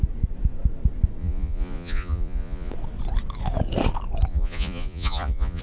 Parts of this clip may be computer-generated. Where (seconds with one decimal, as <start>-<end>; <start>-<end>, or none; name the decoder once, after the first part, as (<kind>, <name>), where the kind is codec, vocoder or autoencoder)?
1.2-2.7 (vocoder, Vocos); 4.3-5.6